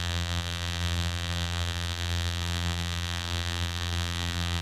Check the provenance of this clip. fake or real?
fake